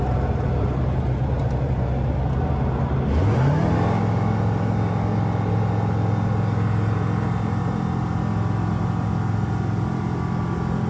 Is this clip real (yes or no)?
yes